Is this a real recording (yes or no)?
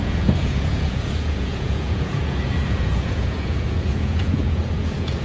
no